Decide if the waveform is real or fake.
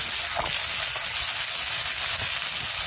real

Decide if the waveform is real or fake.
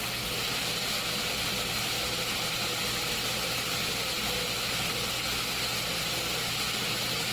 real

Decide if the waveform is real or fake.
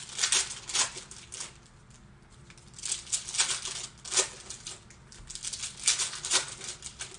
real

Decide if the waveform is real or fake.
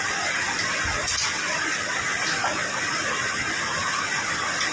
fake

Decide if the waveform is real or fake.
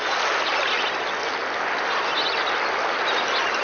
real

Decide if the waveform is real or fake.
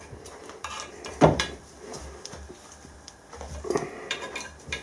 fake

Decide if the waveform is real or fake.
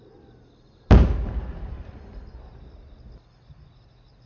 real